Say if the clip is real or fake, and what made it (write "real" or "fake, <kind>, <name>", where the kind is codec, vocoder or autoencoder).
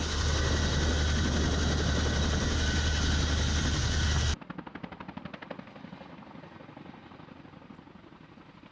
real